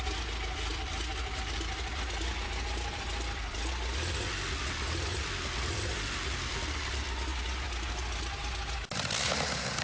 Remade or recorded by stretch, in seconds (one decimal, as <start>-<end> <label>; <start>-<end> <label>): 0.0-0.7 recorded; 0.7-4.0 remade; 4.0-5.1 recorded; 5.1-6.6 remade; 6.6-9.8 recorded